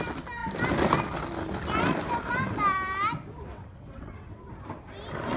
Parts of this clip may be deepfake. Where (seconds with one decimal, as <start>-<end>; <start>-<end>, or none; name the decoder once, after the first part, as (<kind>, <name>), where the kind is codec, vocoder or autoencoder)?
3.5-4.5 (vocoder, WaveNeXt)